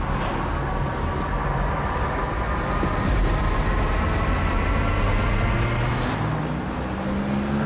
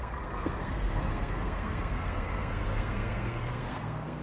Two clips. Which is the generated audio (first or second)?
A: second